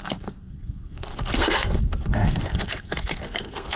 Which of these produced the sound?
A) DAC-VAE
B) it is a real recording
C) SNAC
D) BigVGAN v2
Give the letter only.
C